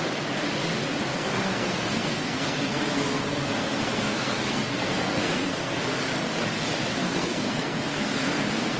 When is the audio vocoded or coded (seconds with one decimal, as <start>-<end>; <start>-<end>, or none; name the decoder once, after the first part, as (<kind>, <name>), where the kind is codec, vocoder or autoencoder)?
1.1-5.8 (codec, SNAC); 6.9-8.8